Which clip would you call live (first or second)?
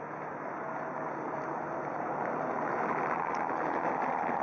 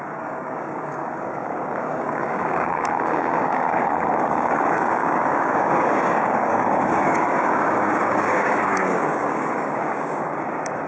first